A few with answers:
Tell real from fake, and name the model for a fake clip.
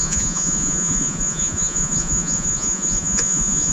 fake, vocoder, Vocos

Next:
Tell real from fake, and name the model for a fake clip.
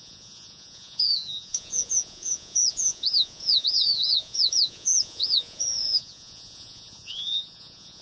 fake, vocoder, Vocos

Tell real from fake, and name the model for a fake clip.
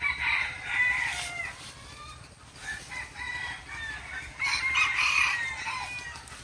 real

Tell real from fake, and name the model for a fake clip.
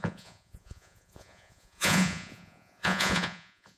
fake, vocoder, Vocos